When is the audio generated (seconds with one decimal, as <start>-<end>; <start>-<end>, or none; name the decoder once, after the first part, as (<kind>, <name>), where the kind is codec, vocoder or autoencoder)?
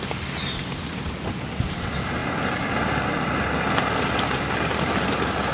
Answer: none